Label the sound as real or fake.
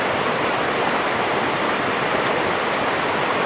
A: real